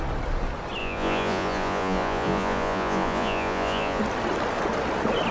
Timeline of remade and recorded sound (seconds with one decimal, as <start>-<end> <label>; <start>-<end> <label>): 0.0-0.8 recorded; 0.8-4.0 remade; 4.0-5.3 recorded